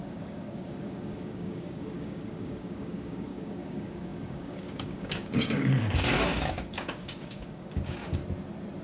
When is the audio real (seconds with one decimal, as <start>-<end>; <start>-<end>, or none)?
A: 8.2-8.8